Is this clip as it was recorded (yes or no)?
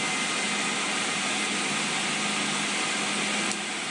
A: yes